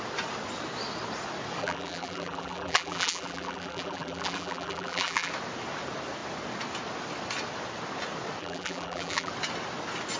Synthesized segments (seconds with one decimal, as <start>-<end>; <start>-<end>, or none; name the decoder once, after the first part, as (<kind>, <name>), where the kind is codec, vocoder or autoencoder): 1.6-5.3 (vocoder, BigVGAN v2); 8.4-9.3